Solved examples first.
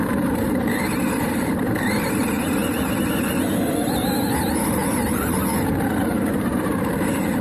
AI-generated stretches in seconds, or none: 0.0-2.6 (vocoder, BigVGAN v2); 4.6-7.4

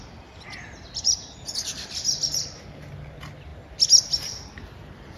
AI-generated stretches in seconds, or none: none

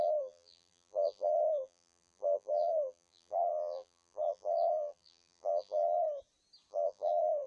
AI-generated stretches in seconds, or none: 0.0-6.0 (vocoder, BigVGAN v2); 6.7-7.5

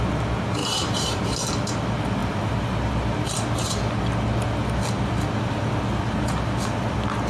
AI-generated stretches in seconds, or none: 0.6-1.2 (vocoder, BigVGAN v2)